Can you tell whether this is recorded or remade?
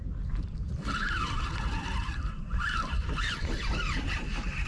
recorded